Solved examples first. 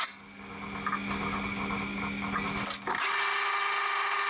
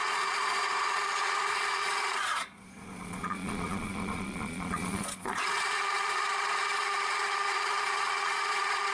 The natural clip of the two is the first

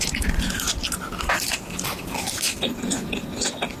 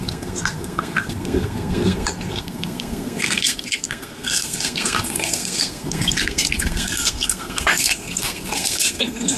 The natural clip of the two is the first